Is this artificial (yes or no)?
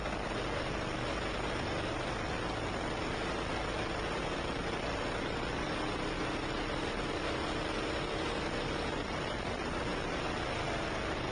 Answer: no